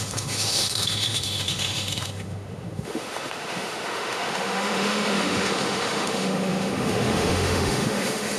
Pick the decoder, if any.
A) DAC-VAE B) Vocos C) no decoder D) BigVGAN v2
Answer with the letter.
A